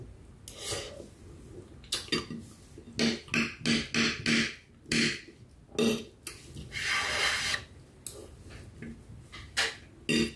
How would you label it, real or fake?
real